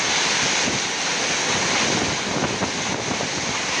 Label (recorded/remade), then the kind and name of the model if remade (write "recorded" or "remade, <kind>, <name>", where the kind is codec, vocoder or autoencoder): recorded